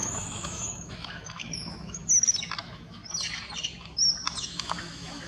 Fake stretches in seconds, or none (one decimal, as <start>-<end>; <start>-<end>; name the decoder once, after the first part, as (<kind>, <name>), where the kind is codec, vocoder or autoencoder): 0.0-2.0 (autoencoder, DAC-VAE); 2.6-3.0; 4.4-5.3